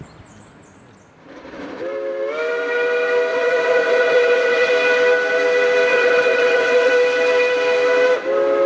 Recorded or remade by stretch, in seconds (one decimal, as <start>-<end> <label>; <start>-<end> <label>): 0.0-3.3 recorded; 3.3-4.7 remade; 4.7-5.9 recorded; 5.9-6.9 remade; 6.9-8.7 recorded